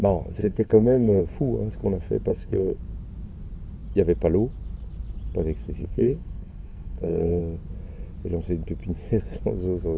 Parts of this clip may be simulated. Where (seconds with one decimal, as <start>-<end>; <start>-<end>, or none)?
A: 0.4-1.2; 2.3-2.8; 5.8-7.4